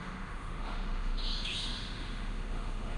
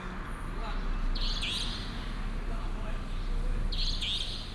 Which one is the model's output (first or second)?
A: first